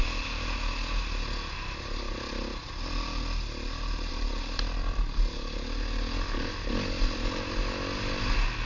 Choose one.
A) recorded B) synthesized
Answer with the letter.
A